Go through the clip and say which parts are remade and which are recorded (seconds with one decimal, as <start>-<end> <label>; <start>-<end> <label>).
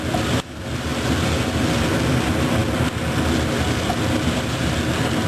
0.0-5.3 recorded